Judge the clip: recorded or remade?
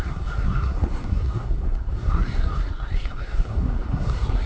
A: remade